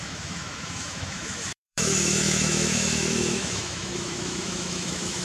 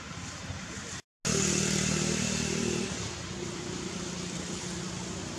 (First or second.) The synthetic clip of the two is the first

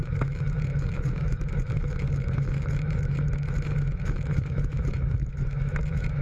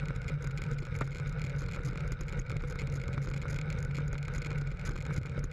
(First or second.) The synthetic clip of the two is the first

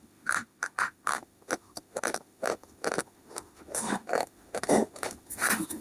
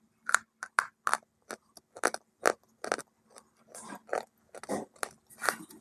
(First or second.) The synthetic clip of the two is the first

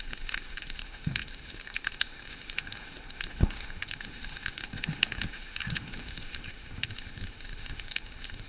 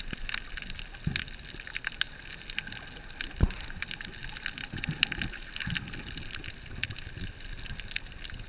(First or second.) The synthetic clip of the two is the first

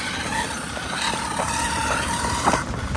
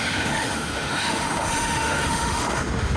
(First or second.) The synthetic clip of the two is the second